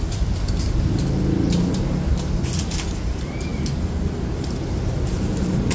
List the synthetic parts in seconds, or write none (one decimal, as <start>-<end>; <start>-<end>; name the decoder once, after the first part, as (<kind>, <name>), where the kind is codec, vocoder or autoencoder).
none